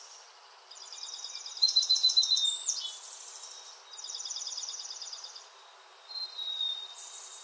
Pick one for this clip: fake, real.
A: fake